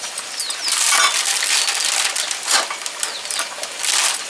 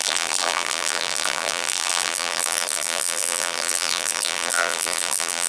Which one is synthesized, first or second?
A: second